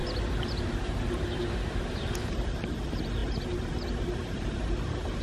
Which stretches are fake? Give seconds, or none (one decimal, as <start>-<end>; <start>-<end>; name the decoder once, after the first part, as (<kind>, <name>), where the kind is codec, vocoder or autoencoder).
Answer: 0.0-3.2 (vocoder, BigVGAN v2); 3.7-5.2